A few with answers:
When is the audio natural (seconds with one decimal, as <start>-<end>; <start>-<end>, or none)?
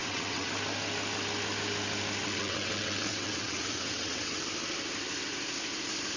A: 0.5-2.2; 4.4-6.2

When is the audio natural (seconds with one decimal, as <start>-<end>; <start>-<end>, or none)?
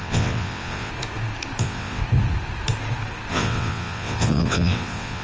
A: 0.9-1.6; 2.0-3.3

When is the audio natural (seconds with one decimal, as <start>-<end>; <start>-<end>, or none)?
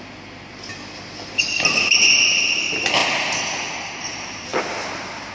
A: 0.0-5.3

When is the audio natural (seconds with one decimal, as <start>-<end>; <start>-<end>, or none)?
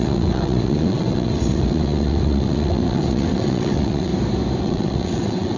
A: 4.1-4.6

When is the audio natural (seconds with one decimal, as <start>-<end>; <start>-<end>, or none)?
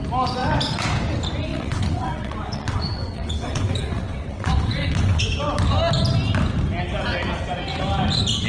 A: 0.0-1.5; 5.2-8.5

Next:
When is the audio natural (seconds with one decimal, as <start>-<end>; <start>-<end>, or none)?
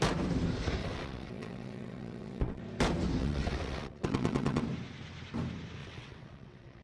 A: 0.0-0.8; 2.6-3.2; 4.6-5.8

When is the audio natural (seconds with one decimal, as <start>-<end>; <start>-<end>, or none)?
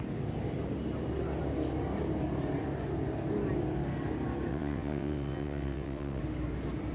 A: 0.0-4.5; 6.2-6.9